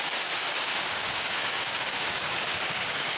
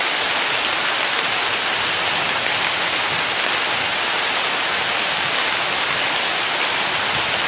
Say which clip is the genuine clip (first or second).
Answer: second